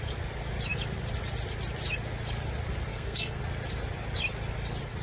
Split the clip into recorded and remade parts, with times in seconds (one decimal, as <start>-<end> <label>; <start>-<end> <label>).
0.0-2.9 recorded; 2.9-3.4 remade; 3.4-5.0 recorded